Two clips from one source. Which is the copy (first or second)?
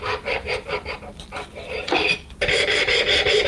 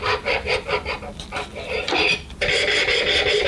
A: first